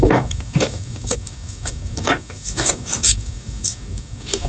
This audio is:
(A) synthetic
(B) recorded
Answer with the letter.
A